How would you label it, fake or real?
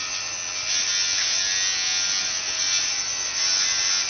real